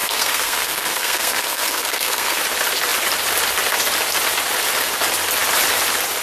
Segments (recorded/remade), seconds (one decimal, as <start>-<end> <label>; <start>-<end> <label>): 0.0-2.4 remade; 2.4-6.2 recorded